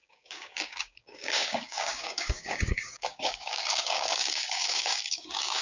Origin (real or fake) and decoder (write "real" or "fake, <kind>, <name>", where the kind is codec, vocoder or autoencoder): fake, codec, DAC